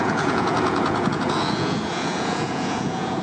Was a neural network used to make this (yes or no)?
yes